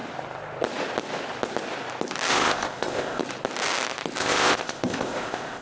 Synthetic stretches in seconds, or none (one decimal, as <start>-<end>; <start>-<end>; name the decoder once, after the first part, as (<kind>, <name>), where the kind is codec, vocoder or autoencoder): 2.3-3.2 (codec, ZipCodec); 4.2-5.6